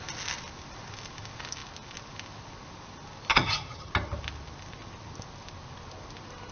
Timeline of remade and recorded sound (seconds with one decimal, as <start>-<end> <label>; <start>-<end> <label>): 0.0-3.3 recorded; 3.3-3.9 remade; 3.9-6.5 recorded